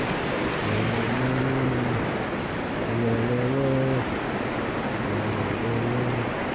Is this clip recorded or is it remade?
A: recorded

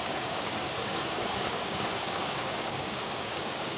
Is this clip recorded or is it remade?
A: remade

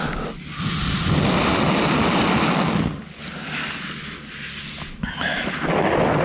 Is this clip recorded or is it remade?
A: recorded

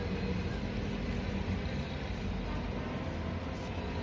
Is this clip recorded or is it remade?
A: recorded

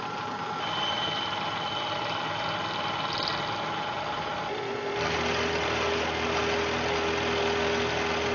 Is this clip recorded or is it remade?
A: recorded